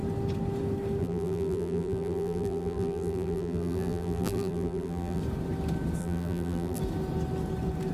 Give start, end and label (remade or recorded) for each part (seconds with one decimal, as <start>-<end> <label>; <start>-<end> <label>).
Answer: 0.0-1.0 recorded; 1.0-5.2 remade; 5.2-6.0 recorded; 6.0-6.8 remade; 6.8-7.9 recorded